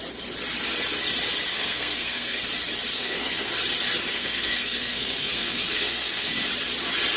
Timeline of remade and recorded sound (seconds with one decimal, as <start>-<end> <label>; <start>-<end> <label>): 0.0-1.5 recorded; 1.5-2.4 remade; 2.4-2.9 recorded; 2.9-3.5 remade; 3.5-4.1 recorded; 4.1-6.3 remade; 6.3-7.2 recorded

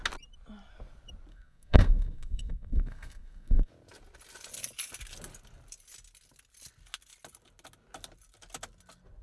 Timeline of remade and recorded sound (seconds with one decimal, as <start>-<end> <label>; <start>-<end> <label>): 0.0-1.3 recorded; 1.3-3.7 remade; 3.7-9.2 recorded

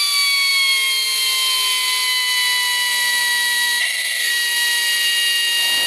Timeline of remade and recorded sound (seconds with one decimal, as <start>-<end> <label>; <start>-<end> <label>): 0.0-3.8 recorded; 3.8-4.3 remade; 4.3-5.9 recorded

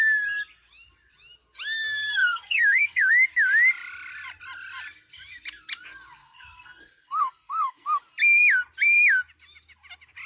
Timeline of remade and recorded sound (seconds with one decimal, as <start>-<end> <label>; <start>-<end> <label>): 0.0-2.2 recorded; 2.2-3.1 remade; 3.1-6.2 recorded; 6.2-8.0 remade; 8.0-10.3 recorded

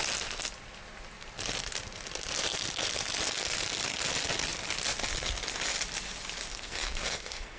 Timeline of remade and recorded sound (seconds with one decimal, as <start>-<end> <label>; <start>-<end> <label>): 0.0-6.5 recorded; 6.5-7.6 remade

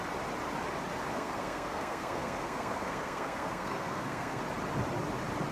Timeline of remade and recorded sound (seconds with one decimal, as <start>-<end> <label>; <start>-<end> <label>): 0.0-1.1 recorded; 1.1-4.4 remade; 4.4-5.5 recorded